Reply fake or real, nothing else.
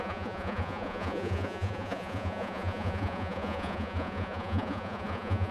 fake